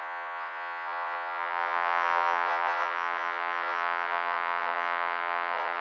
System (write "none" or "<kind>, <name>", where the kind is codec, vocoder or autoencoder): vocoder, WaveNeXt